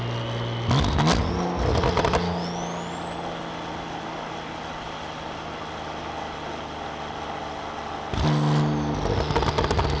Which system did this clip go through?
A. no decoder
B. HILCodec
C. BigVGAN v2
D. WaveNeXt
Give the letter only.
A